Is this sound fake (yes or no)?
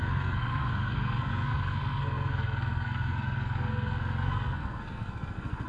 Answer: yes